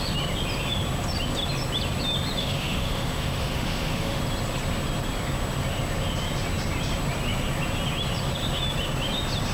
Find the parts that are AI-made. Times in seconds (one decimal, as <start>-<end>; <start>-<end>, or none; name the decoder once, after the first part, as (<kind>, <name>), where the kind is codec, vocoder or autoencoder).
2.4-4.2 (autoencoder, DAC-VAE)